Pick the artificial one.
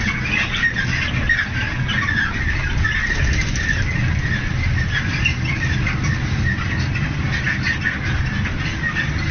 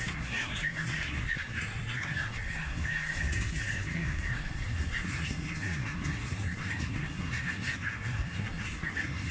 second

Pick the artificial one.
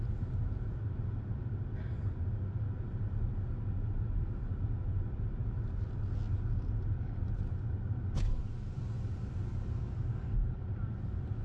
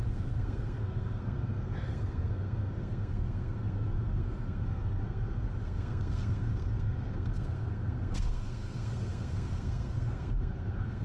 second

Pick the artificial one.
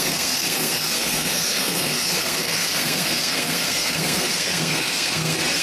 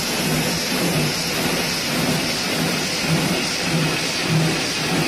first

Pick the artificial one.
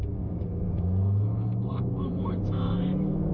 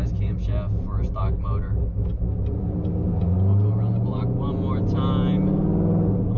first